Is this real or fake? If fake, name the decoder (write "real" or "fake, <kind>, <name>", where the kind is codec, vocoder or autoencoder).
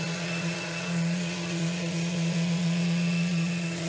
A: fake, vocoder, Vocos